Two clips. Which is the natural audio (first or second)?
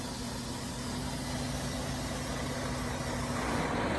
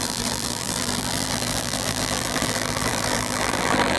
first